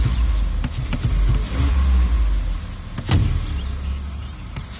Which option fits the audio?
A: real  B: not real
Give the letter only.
A